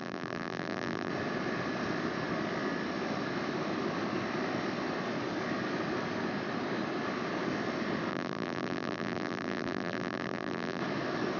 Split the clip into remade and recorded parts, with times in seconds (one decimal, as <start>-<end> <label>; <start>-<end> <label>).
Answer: 0.0-1.1 remade; 1.1-8.1 recorded; 8.1-10.8 remade; 10.8-11.4 recorded